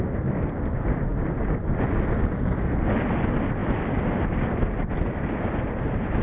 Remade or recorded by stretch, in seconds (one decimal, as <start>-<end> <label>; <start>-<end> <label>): 0.0-6.2 recorded